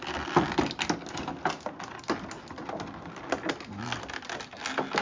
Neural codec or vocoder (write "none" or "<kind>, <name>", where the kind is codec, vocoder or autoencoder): none